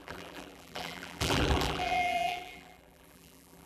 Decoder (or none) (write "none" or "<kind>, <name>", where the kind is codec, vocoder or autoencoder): vocoder, BigVGAN v2